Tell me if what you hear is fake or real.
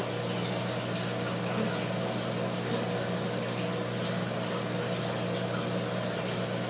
real